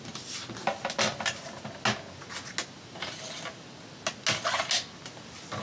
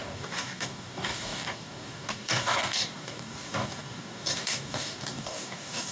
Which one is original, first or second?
first